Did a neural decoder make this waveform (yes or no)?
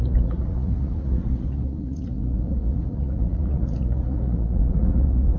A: yes